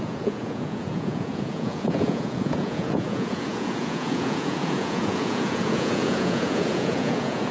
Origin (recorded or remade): remade